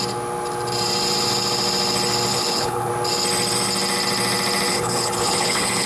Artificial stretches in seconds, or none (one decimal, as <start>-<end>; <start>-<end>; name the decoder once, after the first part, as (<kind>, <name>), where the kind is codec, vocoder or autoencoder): 2.3-2.9 (codec, HILCodec); 4.7-5.9